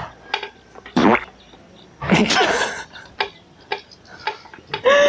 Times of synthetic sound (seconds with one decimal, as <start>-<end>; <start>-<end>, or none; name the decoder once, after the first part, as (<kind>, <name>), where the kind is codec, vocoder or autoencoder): none